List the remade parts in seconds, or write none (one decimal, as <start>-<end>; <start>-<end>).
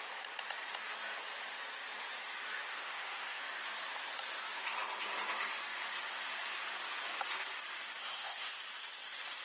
2.7-3.4; 8.0-8.6